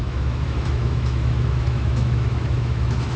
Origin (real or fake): fake